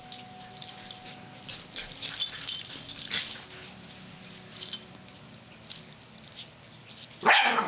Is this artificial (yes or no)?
no